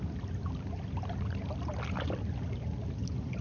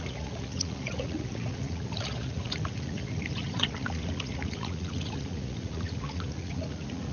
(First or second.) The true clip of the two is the first